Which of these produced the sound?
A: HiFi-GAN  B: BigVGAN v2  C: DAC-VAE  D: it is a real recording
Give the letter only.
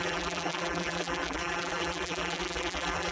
B